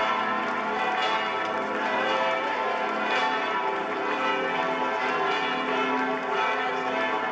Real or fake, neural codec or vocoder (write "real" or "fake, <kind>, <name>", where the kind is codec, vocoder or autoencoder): real